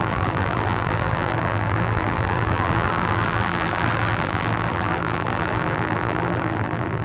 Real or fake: fake